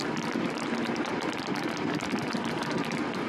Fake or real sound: real